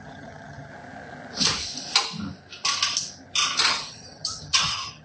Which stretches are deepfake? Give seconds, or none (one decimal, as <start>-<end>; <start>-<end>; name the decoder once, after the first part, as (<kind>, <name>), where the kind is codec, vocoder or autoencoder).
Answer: 0.0-0.7 (vocoder, HiFi-GAN); 3.7-5.0